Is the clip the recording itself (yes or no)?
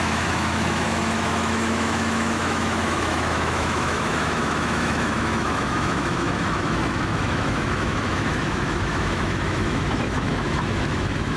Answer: no